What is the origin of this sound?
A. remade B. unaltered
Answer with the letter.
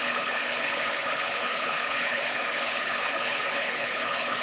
A